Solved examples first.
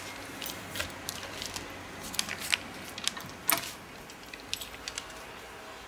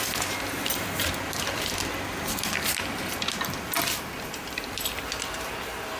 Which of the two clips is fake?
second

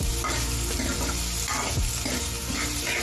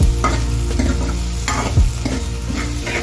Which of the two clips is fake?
first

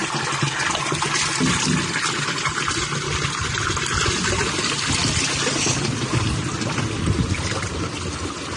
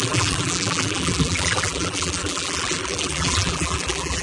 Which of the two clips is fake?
second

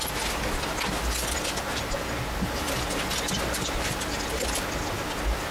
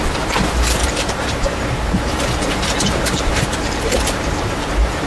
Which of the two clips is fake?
second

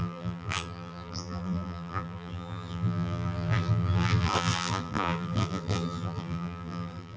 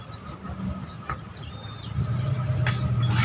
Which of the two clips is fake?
first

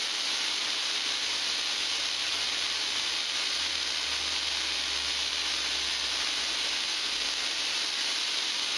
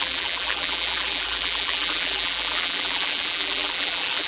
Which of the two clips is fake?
second